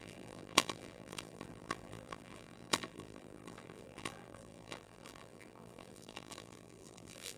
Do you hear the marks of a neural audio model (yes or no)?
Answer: yes